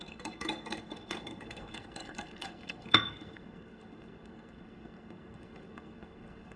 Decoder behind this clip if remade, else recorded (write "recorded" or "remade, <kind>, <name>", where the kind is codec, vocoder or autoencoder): remade, codec, SNAC